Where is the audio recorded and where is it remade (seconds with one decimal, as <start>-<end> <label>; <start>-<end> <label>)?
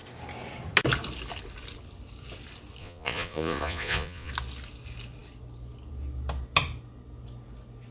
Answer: 0.0-2.8 recorded; 2.8-4.3 remade; 4.3-7.9 recorded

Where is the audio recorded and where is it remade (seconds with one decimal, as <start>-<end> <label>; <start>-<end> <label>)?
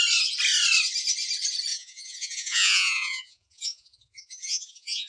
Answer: 0.0-1.7 recorded; 1.7-5.1 remade